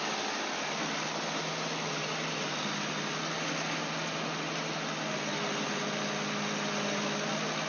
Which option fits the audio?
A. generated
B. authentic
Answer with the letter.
B